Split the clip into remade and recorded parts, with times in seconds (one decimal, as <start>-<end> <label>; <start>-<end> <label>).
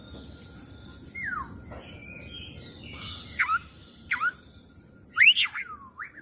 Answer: 0.0-3.8 recorded; 3.8-4.9 remade; 4.9-6.2 recorded